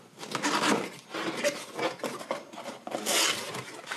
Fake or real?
real